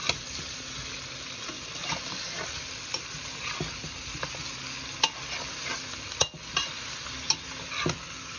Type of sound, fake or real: real